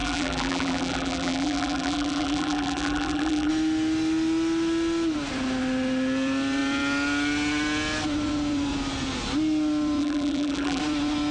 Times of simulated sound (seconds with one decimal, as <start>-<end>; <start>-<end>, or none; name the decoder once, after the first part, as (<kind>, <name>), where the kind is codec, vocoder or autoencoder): 0.0-3.5 (vocoder, BigVGAN v2); 10.0-10.8